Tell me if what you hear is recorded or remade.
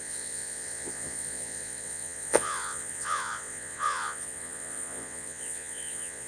remade